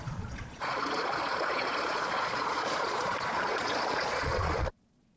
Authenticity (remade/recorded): remade